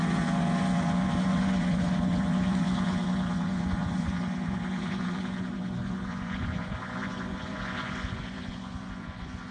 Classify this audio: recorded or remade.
remade